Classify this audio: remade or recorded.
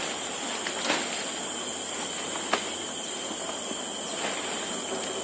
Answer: recorded